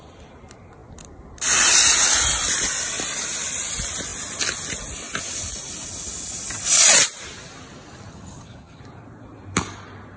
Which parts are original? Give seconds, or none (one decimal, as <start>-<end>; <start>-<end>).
0.0-8.1; 8.8-10.2